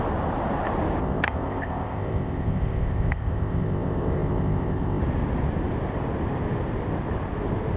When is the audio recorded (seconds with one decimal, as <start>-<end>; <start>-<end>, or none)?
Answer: 0.0-1.0; 5.0-7.8